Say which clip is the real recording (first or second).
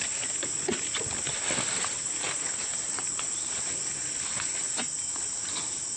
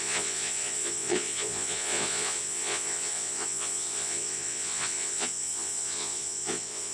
first